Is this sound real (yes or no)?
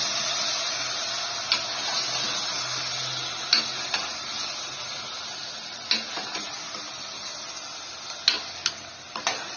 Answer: yes